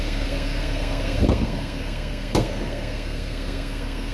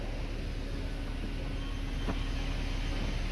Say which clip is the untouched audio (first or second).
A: second